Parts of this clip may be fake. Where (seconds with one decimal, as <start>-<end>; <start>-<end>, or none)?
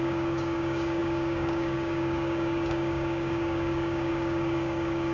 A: 0.0-5.1